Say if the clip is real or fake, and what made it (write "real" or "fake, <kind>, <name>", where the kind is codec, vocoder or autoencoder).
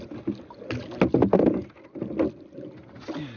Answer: real